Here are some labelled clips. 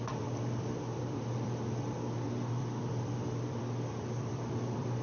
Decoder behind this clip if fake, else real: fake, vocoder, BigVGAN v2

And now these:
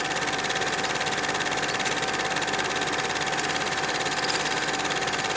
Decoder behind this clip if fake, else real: real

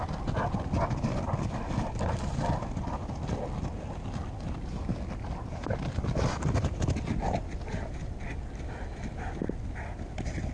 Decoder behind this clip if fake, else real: real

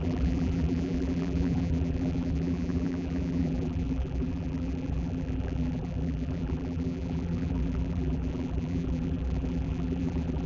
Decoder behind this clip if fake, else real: fake, vocoder, BigVGAN v2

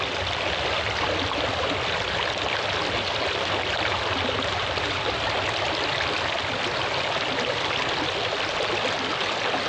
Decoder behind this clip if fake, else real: real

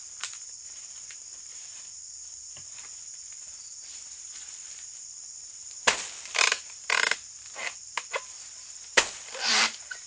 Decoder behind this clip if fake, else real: fake, vocoder, BigVGAN v2